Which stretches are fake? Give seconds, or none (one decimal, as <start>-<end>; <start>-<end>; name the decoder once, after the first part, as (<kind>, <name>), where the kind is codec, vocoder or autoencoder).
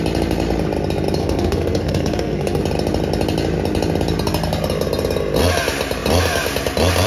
1.2-2.6 (codec, SNAC)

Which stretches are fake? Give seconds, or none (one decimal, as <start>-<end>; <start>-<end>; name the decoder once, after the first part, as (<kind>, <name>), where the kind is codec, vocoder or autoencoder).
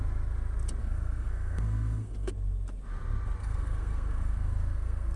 0.8-2.3 (codec, SNAC); 3.4-5.2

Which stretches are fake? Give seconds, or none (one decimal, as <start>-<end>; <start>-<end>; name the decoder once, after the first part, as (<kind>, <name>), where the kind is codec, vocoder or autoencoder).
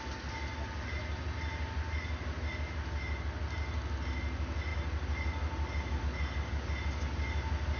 none